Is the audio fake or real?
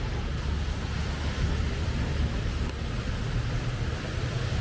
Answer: real